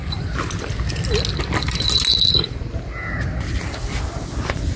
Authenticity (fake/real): real